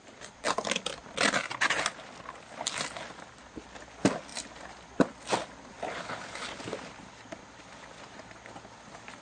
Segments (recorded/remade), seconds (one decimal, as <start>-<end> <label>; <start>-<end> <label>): 0.0-9.2 recorded